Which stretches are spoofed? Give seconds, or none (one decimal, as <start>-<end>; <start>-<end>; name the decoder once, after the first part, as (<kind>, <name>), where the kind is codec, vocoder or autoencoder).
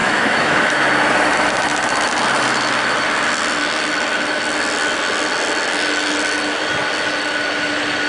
0.0-0.7 (autoencoder, DAC-VAE)